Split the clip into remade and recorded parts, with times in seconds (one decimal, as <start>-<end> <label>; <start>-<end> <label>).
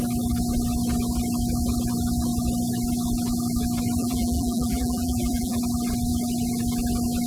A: 0.0-4.0 recorded; 4.0-5.6 remade; 5.6-7.3 recorded